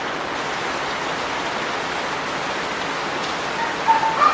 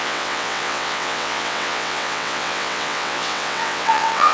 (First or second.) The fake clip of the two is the second